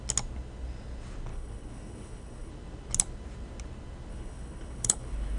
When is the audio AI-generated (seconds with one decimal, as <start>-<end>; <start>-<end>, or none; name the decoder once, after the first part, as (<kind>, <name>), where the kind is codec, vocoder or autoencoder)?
1.3-2.5 (codec, HILCodec); 4.1-5.4